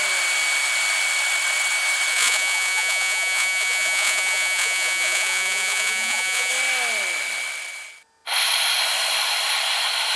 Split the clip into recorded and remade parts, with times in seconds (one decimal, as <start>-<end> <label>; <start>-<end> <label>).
0.0-2.1 recorded; 2.1-6.5 remade; 6.5-10.2 recorded